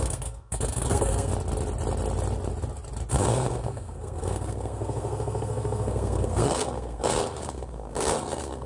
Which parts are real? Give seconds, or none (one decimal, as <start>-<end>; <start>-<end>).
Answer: 1.3-3.1